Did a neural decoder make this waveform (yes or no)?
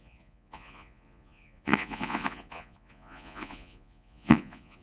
yes